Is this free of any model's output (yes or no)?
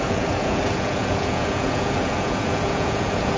no